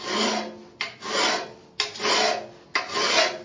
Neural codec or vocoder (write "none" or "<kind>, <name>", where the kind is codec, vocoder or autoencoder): none